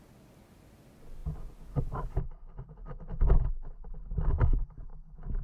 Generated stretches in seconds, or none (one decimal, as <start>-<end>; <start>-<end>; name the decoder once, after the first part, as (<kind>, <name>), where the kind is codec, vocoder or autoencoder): none